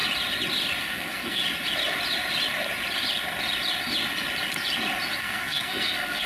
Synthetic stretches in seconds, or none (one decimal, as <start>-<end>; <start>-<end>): 0.8-1.4; 5.2-6.3

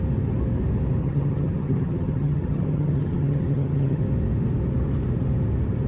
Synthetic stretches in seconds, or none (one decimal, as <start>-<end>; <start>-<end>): 1.0-4.0